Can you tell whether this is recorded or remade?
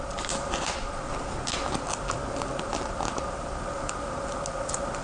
recorded